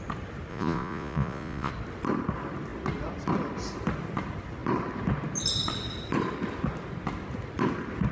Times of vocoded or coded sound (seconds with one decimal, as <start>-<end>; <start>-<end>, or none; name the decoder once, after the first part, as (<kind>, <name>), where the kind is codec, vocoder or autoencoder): 0.5-1.7 (vocoder, Vocos)